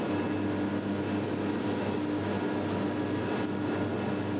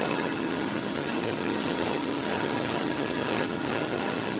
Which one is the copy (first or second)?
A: second